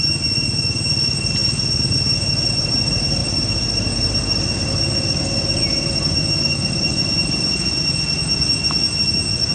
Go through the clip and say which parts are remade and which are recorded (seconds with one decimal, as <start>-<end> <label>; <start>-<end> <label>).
0.0-9.5 recorded